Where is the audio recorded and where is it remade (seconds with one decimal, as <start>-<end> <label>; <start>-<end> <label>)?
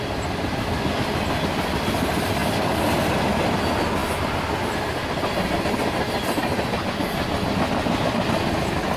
0.0-9.0 recorded